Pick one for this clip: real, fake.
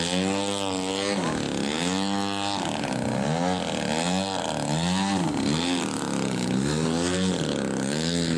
real